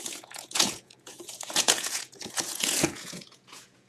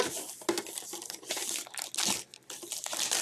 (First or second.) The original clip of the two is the second